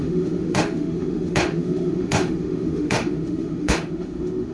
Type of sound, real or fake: fake